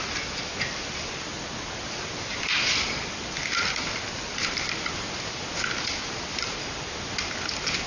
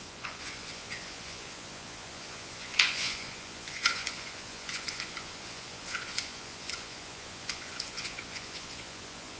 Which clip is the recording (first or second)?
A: first